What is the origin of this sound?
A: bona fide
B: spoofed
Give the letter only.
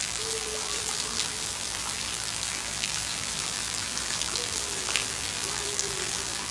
B